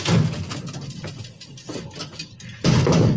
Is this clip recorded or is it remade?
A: recorded